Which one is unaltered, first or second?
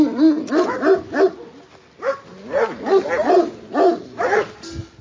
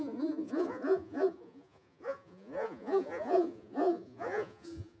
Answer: first